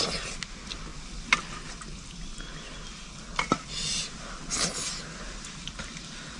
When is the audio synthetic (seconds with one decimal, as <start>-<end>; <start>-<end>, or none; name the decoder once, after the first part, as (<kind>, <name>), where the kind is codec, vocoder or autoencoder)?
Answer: none